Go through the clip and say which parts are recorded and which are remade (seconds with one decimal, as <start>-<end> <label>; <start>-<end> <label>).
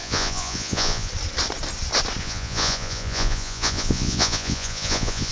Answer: 0.0-1.1 remade; 1.1-2.2 recorded; 2.2-5.3 remade